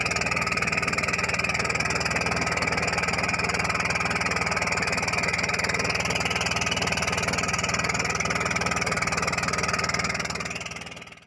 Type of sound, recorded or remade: recorded